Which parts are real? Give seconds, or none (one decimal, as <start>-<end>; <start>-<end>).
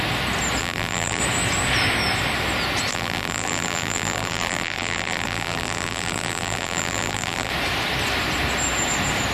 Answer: 0.0-0.6; 1.2-2.9; 7.5-9.3